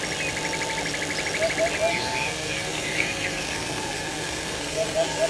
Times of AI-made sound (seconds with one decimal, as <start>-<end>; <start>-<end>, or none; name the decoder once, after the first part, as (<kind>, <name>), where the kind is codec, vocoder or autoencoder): 1.9-5.3 (codec, SNAC)